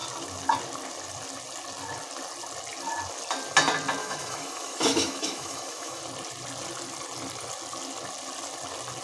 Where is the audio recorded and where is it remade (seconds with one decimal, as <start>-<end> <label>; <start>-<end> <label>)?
0.0-4.0 recorded; 4.0-6.0 remade; 6.0-9.0 recorded

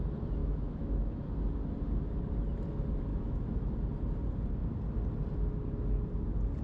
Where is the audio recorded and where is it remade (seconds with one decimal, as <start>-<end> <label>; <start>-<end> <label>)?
0.0-0.4 recorded; 0.4-1.2 remade; 1.2-3.1 recorded; 3.1-3.7 remade; 3.7-6.6 recorded

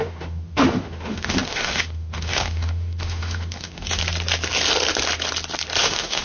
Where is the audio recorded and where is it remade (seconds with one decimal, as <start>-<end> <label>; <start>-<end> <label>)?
0.0-4.0 remade; 4.0-5.8 recorded; 5.8-6.2 remade

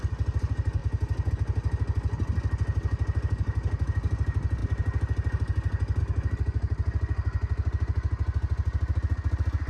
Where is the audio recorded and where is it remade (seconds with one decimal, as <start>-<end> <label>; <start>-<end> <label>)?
0.0-9.7 recorded

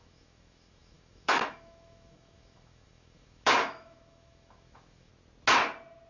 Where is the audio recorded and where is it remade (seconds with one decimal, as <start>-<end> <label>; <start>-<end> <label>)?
0.0-5.1 remade; 5.1-6.1 recorded